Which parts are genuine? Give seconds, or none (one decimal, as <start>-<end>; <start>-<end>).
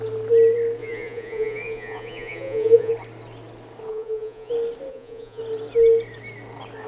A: 0.0-0.8; 2.9-3.9; 4.5-4.9; 5.4-6.9